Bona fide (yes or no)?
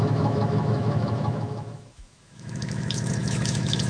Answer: no